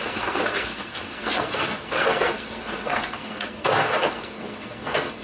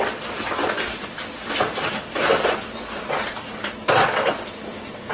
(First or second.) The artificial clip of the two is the first